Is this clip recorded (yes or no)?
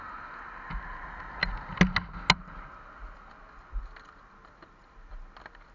yes